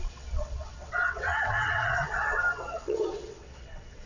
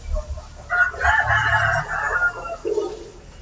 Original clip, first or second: second